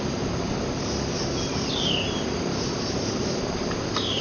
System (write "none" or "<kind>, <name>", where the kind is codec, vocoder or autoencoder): none